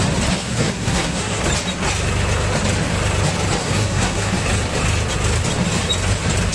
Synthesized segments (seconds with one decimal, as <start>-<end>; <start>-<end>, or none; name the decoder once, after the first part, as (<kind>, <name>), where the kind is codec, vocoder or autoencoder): 0.4-1.4 (codec, SNAC); 3.6-4.3